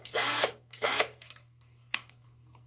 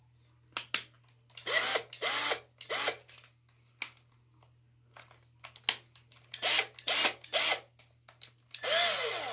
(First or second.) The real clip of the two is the second